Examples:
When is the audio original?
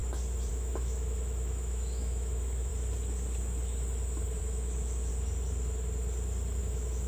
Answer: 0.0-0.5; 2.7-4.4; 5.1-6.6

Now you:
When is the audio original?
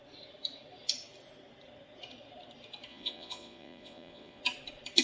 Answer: 0.0-2.9; 4.4-5.0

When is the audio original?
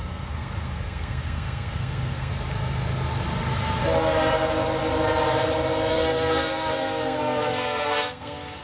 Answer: 2.3-5.9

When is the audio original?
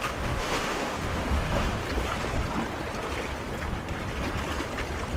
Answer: 1.8-5.2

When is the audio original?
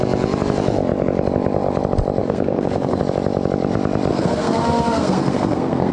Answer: 0.0-2.2; 3.0-4.1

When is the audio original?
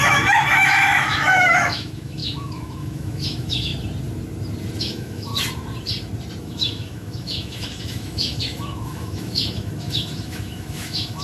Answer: 3.7-4.8; 5.3-6.4